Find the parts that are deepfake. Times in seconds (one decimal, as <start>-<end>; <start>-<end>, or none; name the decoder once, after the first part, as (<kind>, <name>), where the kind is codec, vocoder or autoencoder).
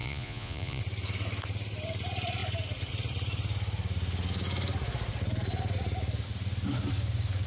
0.0-0.8 (vocoder, Vocos)